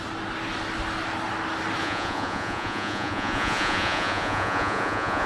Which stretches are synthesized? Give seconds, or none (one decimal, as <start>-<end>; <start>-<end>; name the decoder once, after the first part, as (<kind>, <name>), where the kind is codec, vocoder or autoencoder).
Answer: 1.8-5.3 (vocoder, Vocos)